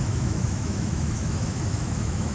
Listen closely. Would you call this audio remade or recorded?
remade